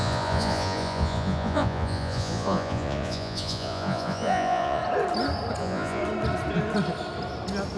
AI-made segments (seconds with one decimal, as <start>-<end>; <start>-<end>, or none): 0.0-4.8; 5.6-6.0